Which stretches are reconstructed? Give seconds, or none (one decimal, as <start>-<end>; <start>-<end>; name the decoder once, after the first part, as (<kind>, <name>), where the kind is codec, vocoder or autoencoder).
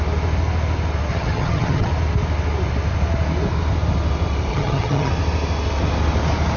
1.1-1.9 (vocoder, HiFi-GAN); 4.5-5.1